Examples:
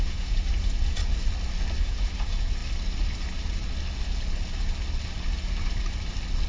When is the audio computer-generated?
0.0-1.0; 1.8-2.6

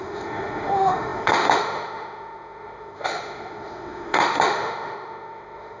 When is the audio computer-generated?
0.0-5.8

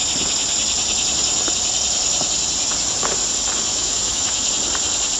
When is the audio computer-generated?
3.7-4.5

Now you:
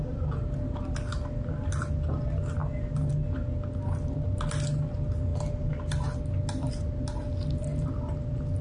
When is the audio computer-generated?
none

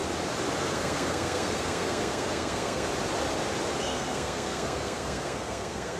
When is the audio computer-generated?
0.6-2.9; 3.8-6.0

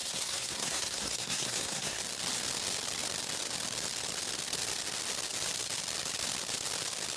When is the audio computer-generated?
0.0-2.0

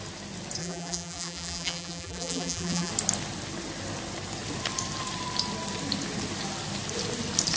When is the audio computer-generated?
0.6-2.9